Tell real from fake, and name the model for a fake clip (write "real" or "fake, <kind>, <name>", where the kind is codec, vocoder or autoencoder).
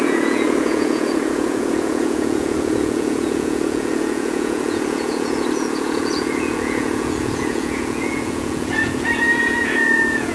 fake, vocoder, Vocos